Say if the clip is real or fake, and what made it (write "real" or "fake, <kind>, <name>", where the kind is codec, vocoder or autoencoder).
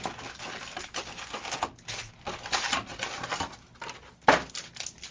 real